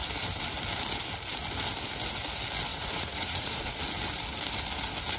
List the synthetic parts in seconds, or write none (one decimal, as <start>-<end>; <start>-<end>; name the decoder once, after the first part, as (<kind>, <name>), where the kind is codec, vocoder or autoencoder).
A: 2.7-3.7 (vocoder, Vocos)